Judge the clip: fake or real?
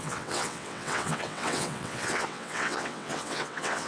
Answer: fake